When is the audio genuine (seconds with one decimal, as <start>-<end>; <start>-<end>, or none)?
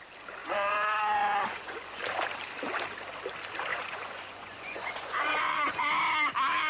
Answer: 0.0-0.4; 2.0-3.7; 5.9-6.7